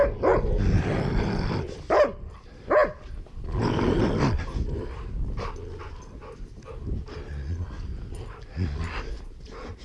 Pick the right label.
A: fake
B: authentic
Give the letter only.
B